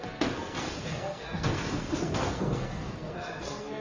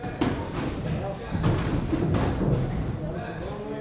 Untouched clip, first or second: second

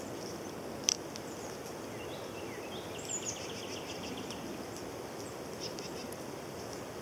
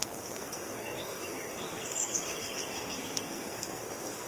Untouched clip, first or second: first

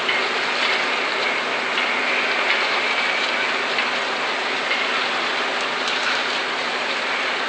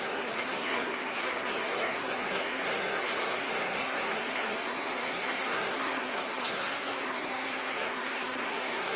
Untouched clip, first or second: first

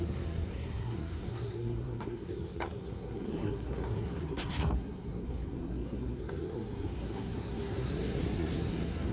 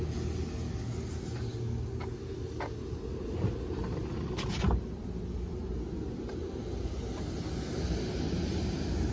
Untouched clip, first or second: second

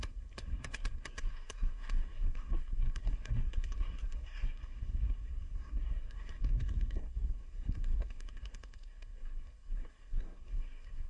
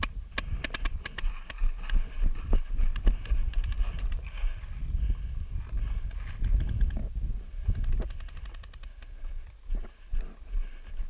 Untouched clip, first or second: second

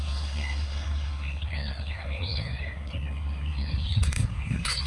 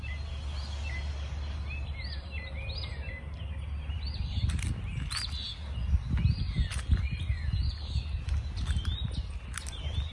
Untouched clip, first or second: second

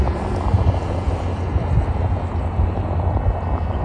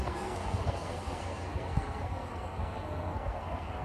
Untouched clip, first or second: first